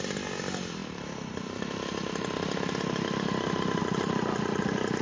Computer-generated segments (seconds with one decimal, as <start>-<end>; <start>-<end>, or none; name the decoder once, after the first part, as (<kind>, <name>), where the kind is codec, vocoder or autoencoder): none